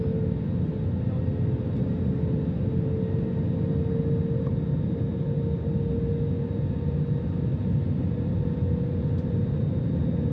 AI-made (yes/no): no